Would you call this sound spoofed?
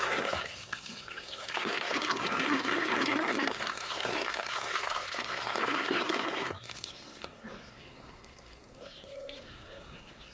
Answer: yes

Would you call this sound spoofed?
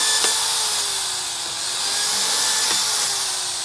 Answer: no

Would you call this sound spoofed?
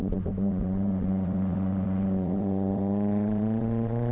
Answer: yes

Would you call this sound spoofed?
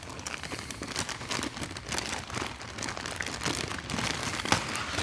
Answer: no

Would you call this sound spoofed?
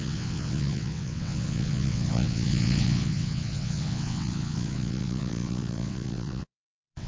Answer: yes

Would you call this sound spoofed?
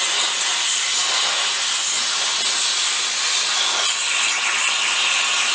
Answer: no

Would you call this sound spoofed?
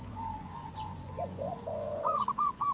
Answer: yes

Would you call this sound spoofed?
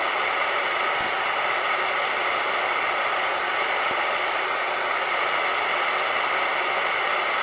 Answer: no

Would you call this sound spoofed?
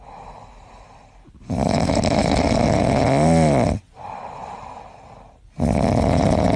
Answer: no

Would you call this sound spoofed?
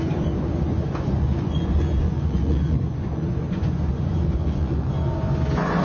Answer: yes